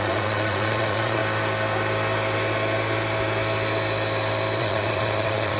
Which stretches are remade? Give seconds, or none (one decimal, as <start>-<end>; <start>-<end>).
0.0-1.2; 4.6-5.6